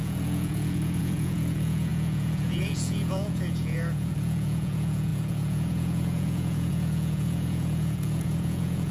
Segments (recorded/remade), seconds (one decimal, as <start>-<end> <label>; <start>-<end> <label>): 0.0-8.9 remade